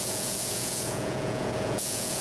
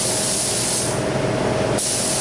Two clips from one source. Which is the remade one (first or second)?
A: first